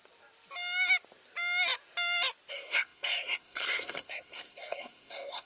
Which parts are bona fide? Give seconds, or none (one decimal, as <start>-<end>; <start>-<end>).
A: 0.0-2.5